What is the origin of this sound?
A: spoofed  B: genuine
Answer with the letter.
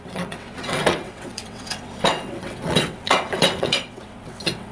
A